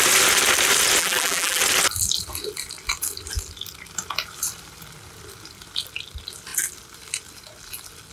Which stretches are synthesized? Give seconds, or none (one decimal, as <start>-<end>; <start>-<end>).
1.0-1.6